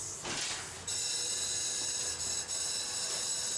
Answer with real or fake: real